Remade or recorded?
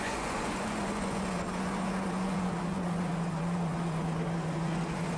remade